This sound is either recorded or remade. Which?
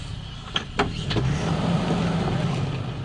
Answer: recorded